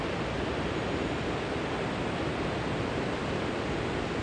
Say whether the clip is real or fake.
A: real